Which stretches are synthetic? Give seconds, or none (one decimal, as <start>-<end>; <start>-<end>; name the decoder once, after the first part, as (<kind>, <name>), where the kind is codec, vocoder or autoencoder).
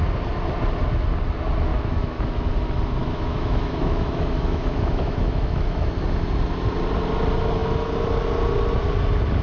1.7-2.5 (autoencoder, DAC-VAE); 3.0-5.9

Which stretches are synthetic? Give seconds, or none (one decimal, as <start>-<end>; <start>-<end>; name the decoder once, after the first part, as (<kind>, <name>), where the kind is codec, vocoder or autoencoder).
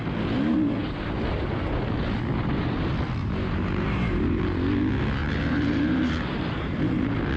3.2-4.4 (vocoder, BigVGAN v2); 5.2-6.6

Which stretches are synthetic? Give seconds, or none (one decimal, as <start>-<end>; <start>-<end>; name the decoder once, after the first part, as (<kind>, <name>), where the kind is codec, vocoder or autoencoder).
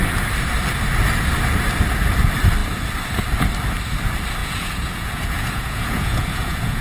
4.4-6.8 (vocoder, Vocos)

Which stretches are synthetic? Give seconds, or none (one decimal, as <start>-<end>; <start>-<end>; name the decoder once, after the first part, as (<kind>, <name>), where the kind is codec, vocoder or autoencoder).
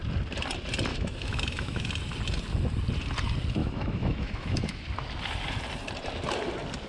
0.9-1.9 (autoencoder, DAC-VAE); 3.6-4.8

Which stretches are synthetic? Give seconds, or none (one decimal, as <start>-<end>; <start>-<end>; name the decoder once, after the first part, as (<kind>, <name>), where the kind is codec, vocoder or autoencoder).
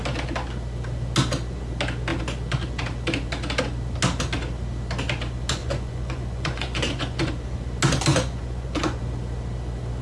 5.6-7.3 (vocoder, Vocos); 8.1-9.0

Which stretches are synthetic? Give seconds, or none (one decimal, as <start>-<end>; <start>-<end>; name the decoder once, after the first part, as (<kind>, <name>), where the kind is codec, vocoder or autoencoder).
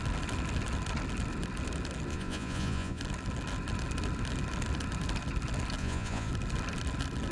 2.1-3.0 (vocoder, Vocos); 5.8-6.3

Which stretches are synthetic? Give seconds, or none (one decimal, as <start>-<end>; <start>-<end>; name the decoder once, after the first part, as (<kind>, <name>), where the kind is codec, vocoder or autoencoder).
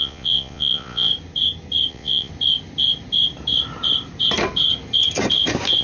0.0-1.1 (vocoder, Vocos); 1.9-2.3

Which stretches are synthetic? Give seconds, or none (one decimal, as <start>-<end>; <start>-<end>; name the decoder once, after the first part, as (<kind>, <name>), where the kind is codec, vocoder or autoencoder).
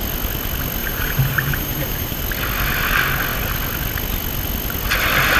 0.8-2.2 (vocoder, BigVGAN v2)